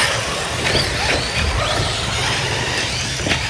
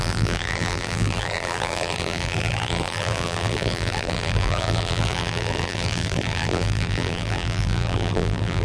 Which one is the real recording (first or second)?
first